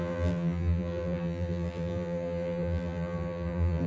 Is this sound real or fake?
fake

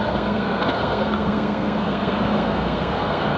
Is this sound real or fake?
fake